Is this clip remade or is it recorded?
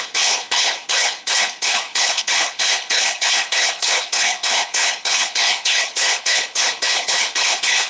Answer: remade